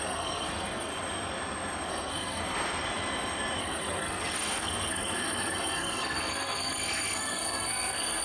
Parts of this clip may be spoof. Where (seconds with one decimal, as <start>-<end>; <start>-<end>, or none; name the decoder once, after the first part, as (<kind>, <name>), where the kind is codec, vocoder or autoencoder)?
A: 0.0-0.9 (codec, SNAC); 1.9-2.4; 3.6-8.2